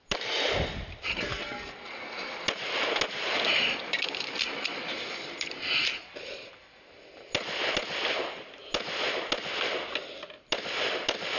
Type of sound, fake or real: real